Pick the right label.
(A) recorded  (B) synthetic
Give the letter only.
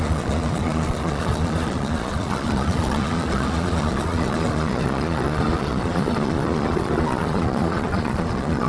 B